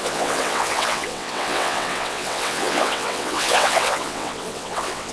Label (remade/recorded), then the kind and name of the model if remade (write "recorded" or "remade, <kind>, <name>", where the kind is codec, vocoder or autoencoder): remade, vocoder, WaveNeXt